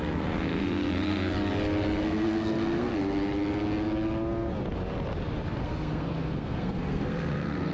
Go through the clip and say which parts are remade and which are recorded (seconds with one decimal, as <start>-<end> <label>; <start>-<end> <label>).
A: 0.0-1.3 remade; 1.3-2.0 recorded; 2.0-2.9 remade; 2.9-5.6 recorded; 5.6-7.7 remade